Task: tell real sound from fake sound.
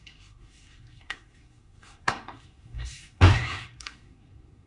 fake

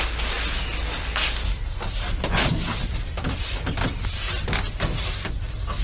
real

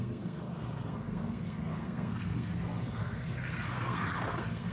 fake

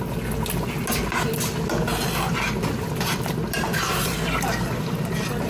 real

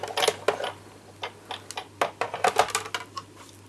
real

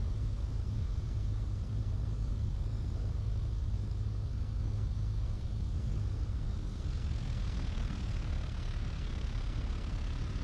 fake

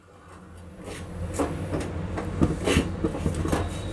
real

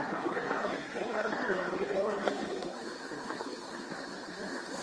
fake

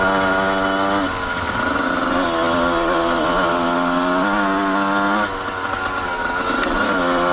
real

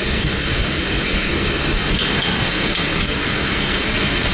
fake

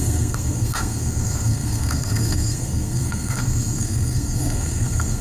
fake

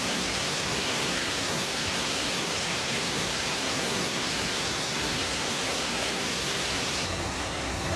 fake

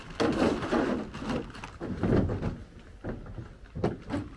real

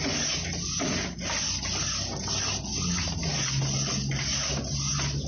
real